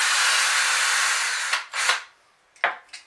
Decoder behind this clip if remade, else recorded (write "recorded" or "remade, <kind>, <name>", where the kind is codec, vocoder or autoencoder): recorded